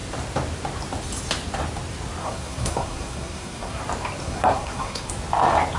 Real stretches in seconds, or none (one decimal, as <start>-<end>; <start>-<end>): 0.0-2.2; 3.8-4.2; 5.1-5.8